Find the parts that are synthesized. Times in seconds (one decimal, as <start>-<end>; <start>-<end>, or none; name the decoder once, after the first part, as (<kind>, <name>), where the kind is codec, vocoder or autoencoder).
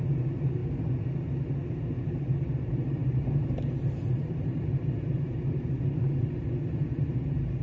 0.0-0.6 (vocoder, BigVGAN v2); 1.7-7.6